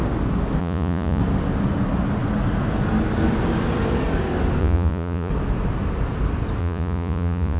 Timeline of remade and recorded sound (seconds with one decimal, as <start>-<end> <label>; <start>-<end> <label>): 0.0-0.6 recorded; 0.6-1.2 remade; 1.2-4.6 recorded; 4.6-5.3 remade; 5.3-6.6 recorded; 6.6-7.6 remade